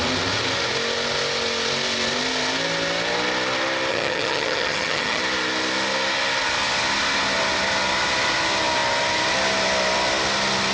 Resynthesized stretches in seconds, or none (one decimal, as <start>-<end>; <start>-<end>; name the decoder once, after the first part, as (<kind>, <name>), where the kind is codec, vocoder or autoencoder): 3.9-5.2 (vocoder, HiFi-GAN)

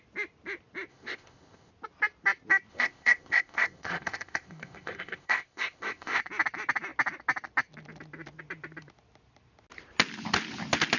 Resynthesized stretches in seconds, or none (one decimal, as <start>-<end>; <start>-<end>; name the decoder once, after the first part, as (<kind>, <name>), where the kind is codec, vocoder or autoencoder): 0.9-1.7 (codec, ZipCodec); 2.7-6.2

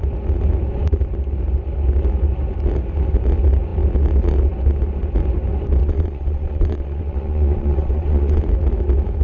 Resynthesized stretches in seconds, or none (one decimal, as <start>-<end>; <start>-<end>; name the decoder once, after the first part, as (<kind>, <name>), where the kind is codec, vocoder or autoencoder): 5.8-8.4 (vocoder, WaveNeXt)